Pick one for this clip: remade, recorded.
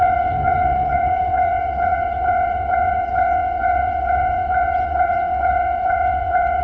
remade